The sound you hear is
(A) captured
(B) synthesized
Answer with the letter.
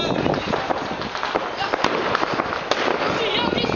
A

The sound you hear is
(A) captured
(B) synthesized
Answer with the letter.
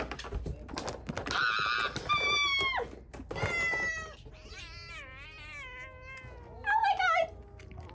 A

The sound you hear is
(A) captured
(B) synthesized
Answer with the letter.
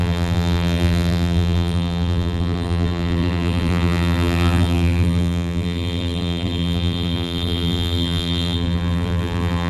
B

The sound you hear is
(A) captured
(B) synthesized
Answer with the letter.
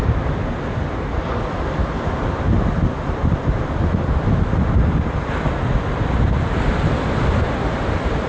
A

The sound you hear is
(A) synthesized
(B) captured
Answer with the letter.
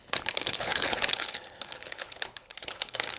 A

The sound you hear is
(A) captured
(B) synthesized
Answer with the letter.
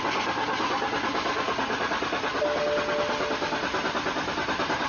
A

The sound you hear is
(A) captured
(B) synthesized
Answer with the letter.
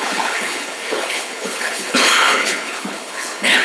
B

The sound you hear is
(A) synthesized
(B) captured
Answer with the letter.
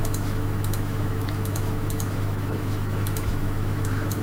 A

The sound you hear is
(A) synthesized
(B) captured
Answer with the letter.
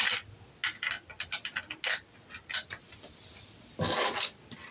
B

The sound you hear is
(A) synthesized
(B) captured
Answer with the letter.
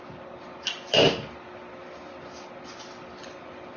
B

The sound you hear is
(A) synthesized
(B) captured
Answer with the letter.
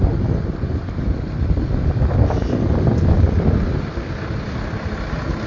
B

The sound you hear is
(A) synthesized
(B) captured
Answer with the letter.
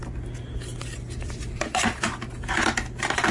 B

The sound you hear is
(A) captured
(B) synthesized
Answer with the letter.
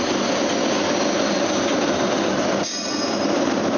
A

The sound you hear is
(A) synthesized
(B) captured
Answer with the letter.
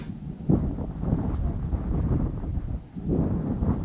B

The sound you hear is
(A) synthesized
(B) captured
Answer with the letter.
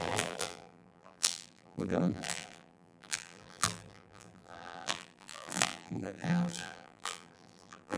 A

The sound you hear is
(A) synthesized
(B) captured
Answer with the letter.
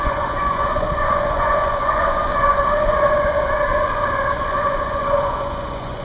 A